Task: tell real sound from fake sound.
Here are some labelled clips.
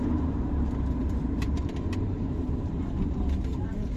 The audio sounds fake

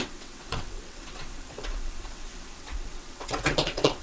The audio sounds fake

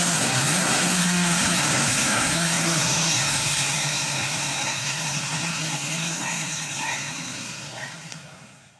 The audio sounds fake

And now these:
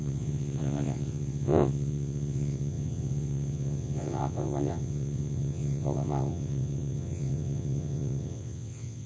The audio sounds fake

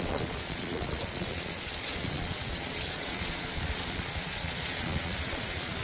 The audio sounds fake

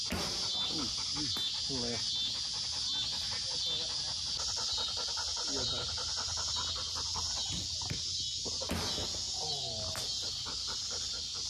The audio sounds real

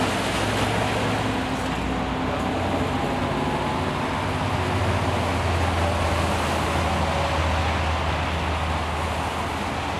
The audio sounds real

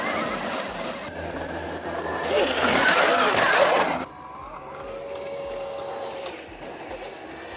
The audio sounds real